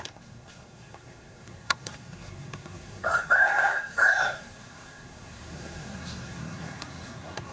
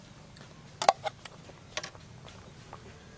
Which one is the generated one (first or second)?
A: first